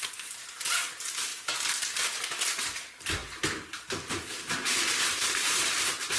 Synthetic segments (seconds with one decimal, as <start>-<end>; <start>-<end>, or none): 0.0-1.3; 2.6-6.2